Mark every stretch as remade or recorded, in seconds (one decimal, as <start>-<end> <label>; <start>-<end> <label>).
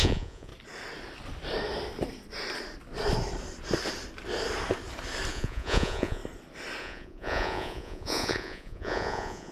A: 0.0-0.5 remade; 0.5-5.3 recorded; 5.3-6.2 remade; 6.2-6.8 recorded; 6.8-9.5 remade